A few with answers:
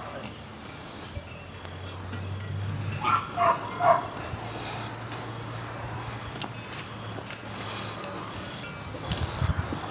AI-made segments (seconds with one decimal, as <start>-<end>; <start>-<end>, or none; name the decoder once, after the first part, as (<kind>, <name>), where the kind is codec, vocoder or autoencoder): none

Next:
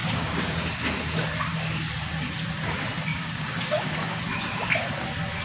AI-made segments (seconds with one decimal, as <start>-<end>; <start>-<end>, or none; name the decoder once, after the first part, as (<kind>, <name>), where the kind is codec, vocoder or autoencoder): 0.0-0.7 (codec, DAC); 3.1-4.2

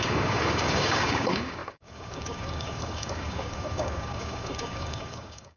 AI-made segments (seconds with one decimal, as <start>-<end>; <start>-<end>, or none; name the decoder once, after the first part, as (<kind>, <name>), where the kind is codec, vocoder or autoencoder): 0.0-5.6 (codec, DAC)